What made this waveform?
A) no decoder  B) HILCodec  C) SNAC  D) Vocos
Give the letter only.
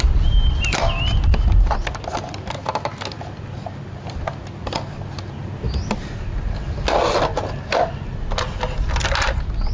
A